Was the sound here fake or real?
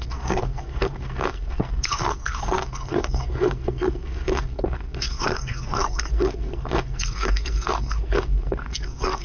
fake